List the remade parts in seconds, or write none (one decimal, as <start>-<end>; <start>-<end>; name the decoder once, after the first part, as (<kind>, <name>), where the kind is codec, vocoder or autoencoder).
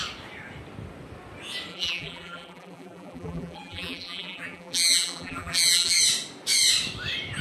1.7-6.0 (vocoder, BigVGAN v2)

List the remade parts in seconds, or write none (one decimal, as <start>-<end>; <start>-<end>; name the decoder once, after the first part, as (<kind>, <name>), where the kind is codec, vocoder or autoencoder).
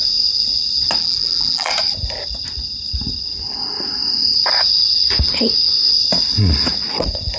1.0-1.7 (vocoder, BigVGAN v2)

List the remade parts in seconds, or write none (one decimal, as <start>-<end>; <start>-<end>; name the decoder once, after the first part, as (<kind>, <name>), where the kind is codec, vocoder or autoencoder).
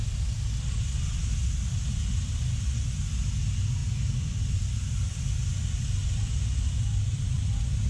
3.8-7.4 (vocoder, BigVGAN v2)